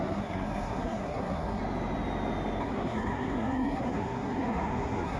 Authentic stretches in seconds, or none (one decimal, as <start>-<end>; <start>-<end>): 1.6-2.6